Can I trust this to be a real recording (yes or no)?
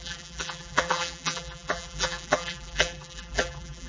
no